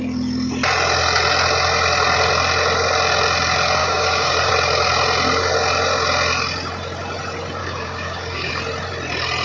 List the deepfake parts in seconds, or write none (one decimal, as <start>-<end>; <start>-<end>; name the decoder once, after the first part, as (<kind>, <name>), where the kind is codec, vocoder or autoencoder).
3.8-4.5 (codec, DAC); 7.6-8.5